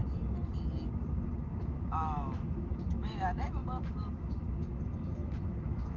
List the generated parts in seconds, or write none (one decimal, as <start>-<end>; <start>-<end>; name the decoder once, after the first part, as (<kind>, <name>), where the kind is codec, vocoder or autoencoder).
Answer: 1.6-6.0 (autoencoder, DAC-VAE)